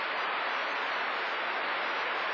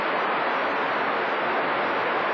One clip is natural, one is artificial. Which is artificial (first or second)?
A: first